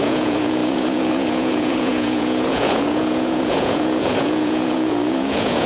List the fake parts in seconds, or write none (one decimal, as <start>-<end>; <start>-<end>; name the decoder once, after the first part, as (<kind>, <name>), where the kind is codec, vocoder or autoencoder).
0.0-5.7 (vocoder, Vocos)